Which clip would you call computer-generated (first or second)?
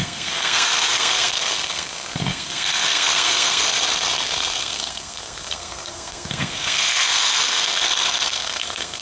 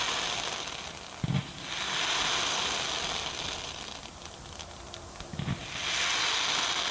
first